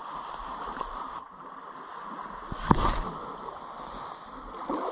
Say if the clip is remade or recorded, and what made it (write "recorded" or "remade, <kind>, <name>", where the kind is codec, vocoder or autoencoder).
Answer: recorded